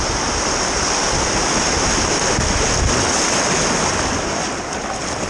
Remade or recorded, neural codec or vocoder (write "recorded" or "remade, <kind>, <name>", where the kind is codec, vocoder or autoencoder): recorded